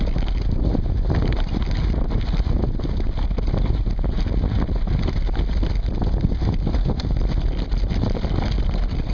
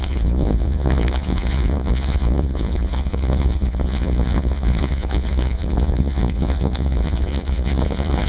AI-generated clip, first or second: second